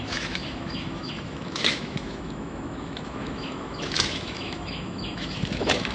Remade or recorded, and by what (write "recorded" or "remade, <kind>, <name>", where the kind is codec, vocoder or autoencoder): remade, autoencoder, DAC-VAE